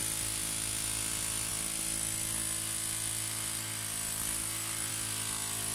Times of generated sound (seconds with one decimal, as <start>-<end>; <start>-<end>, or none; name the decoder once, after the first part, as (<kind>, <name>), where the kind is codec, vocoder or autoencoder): none